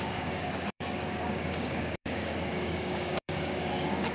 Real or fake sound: fake